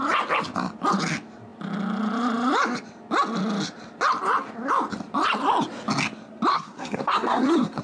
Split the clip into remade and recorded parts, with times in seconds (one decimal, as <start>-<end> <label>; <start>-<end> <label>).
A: 0.0-6.5 recorded; 6.5-7.8 remade